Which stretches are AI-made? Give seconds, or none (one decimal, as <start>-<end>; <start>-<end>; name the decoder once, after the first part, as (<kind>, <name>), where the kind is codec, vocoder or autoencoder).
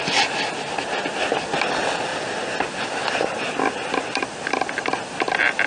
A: none